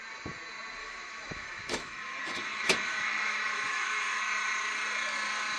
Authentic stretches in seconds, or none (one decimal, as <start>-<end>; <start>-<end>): 0.0-0.8; 4.2-5.6